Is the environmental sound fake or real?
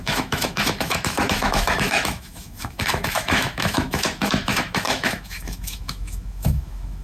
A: fake